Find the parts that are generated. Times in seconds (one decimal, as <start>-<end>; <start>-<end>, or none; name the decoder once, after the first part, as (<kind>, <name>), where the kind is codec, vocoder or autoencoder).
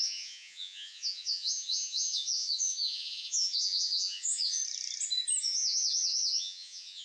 0.0-4.6 (vocoder, Vocos); 5.4-7.0